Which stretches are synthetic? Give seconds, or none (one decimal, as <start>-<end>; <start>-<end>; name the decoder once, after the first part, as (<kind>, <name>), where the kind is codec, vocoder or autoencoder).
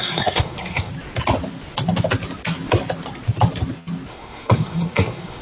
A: 0.0-0.9 (codec, SNAC); 4.1-5.4